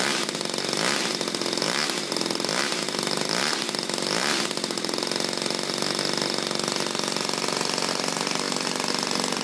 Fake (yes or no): no